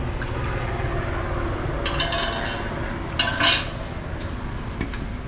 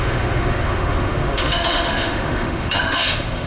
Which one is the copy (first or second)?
second